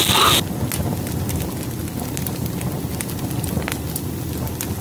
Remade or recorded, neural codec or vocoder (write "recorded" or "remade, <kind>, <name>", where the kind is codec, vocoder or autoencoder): recorded